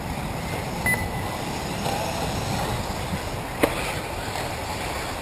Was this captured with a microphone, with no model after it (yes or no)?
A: yes